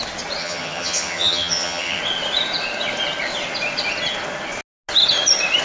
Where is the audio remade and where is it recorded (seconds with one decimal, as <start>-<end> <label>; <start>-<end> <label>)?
0.0-0.4 recorded; 0.4-2.0 remade; 2.0-5.6 recorded